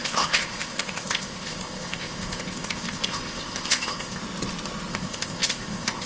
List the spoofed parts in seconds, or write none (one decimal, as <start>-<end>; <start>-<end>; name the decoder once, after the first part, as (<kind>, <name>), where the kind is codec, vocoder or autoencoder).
0.0-4.2 (codec, ZipCodec); 4.9-6.1